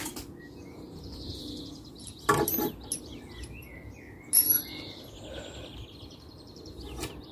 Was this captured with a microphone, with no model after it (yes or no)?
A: yes